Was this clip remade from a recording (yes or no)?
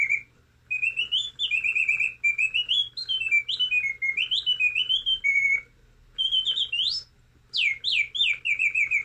no